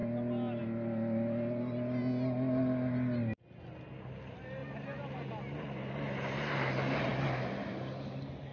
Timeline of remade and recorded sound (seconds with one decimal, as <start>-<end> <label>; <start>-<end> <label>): 0.0-8.5 recorded